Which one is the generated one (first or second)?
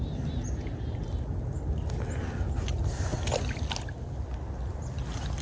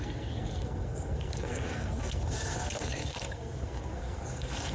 second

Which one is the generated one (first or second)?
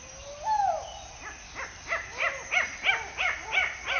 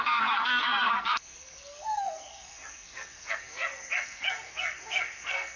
second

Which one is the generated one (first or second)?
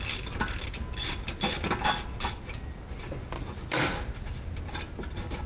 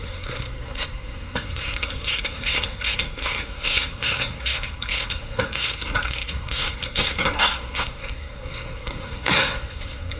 second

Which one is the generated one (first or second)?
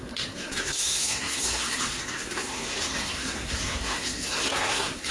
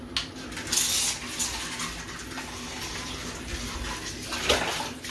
first